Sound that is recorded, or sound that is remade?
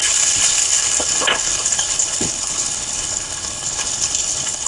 remade